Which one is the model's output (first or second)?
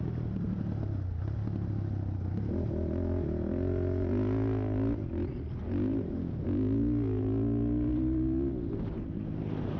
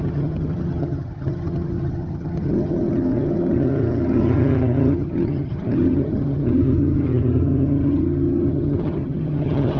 second